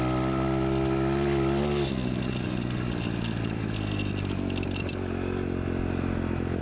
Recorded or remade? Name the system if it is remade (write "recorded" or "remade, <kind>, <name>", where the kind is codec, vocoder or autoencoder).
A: recorded